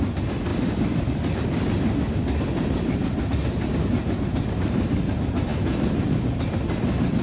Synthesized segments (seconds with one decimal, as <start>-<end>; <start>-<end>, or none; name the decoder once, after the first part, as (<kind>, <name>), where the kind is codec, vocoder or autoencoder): none